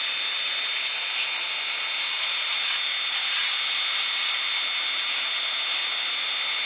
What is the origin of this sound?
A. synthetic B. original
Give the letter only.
B